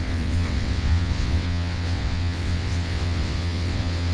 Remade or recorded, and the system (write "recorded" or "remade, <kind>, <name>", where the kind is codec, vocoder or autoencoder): remade, vocoder, WaveNeXt